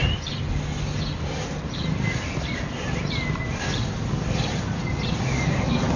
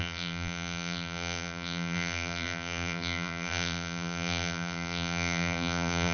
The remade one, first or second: second